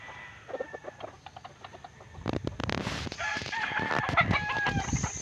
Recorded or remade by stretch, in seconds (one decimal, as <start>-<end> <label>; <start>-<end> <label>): 0.0-5.2 recorded